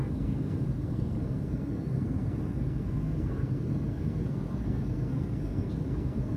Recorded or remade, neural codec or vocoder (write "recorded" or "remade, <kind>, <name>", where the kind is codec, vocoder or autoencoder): remade, codec, SNAC